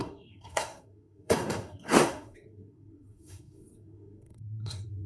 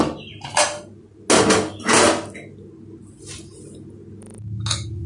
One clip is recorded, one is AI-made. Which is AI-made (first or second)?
first